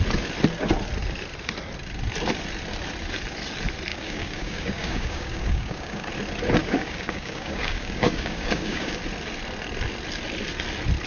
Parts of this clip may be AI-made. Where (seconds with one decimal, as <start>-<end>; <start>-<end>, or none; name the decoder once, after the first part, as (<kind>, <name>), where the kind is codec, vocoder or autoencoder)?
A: 3.9-6.1 (codec, DAC); 6.6-9.0